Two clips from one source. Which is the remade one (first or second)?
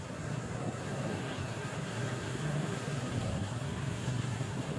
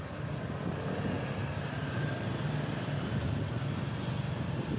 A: first